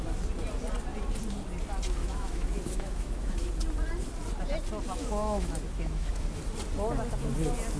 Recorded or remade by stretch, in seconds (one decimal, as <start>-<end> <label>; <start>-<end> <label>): 0.0-2.0 recorded; 2.0-3.5 remade; 3.5-5.0 recorded; 5.0-6.4 remade; 6.4-7.8 recorded